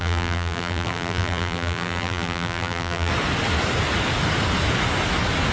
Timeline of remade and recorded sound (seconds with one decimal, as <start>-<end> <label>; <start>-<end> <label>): 0.0-3.1 remade; 3.1-5.5 recorded